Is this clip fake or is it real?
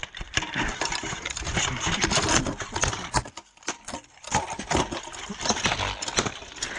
fake